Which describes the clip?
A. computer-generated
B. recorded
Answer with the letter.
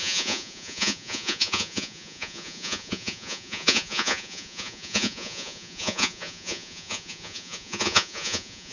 A